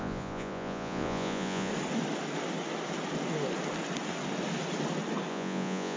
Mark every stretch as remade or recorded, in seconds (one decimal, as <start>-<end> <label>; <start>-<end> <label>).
0.0-1.7 remade; 1.7-5.3 recorded; 5.3-6.0 remade